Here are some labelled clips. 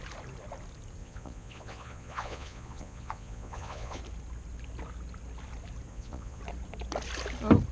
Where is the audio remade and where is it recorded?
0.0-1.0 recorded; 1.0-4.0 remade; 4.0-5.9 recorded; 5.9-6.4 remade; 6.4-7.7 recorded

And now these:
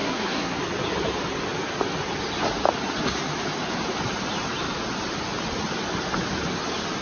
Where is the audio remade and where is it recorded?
0.0-0.6 remade; 0.6-7.0 recorded

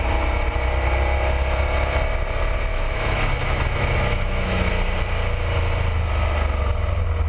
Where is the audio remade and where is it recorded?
0.0-2.7 recorded; 2.7-4.7 remade; 4.7-7.3 recorded